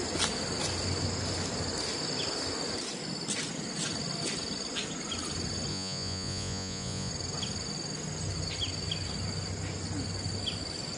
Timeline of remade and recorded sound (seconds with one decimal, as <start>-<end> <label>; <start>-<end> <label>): 0.0-5.7 recorded; 5.7-7.1 remade; 7.1-11.0 recorded